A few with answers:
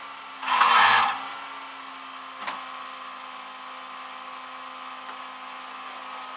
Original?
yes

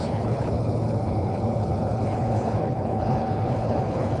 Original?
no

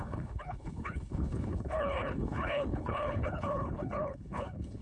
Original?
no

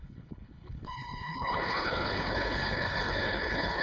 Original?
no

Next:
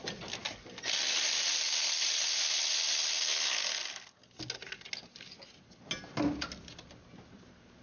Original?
yes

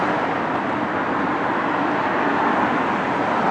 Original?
yes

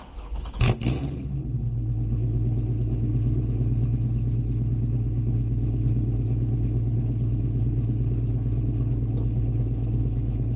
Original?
no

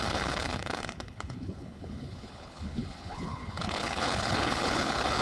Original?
no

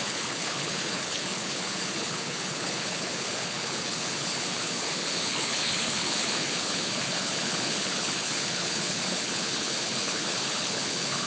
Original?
no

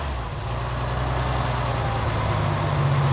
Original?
yes